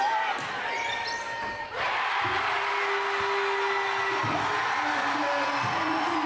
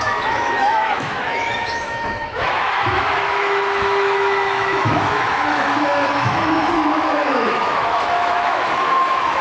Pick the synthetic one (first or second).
second